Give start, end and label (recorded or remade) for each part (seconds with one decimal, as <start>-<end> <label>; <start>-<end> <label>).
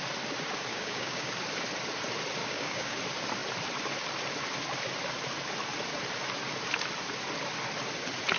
0.0-0.7 recorded; 0.7-1.3 remade; 1.3-2.4 recorded; 2.4-3.0 remade; 3.0-8.4 recorded